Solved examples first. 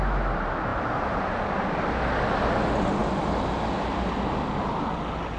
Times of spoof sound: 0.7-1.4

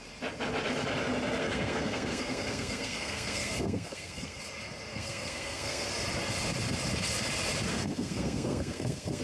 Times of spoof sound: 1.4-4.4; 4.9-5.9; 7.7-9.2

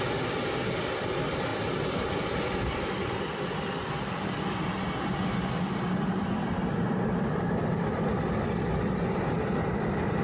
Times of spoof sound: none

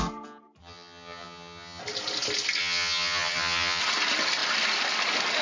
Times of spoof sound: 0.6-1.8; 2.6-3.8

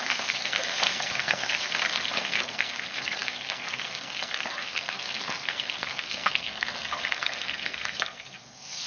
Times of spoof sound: 0.0-8.9

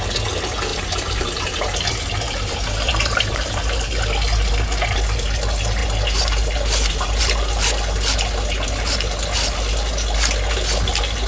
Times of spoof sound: 0.7-3.6

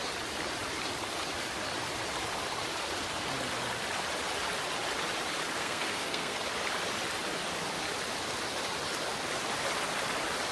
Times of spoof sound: 5.6-6.4